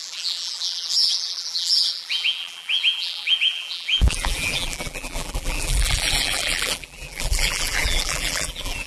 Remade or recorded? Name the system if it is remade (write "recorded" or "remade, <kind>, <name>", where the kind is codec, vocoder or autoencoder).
remade, vocoder, BigVGAN v2